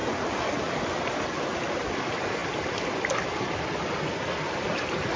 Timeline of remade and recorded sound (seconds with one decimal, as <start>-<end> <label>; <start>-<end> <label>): 0.0-5.2 recorded